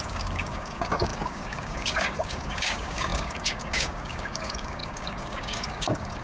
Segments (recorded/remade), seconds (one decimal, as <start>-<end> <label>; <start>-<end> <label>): 0.0-6.2 remade